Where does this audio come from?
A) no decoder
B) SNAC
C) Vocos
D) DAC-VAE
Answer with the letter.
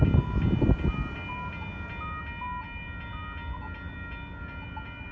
A